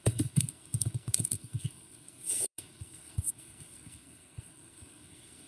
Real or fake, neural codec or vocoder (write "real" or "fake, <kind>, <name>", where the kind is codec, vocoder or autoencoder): fake, codec, SNAC